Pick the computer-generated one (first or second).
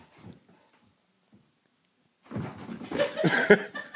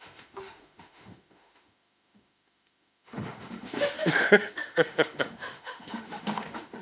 second